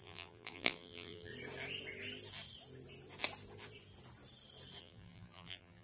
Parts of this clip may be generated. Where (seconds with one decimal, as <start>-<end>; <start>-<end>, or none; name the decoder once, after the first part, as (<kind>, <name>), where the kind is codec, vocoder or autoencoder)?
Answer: 0.0-1.3 (vocoder, BigVGAN v2); 4.8-5.8